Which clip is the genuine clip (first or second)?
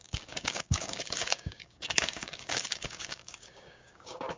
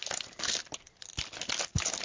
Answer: second